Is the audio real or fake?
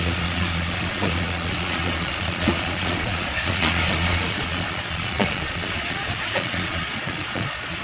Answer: fake